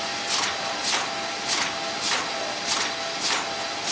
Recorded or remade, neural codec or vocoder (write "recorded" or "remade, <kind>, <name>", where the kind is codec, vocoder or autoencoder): recorded